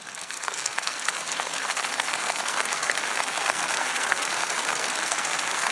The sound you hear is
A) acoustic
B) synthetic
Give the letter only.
B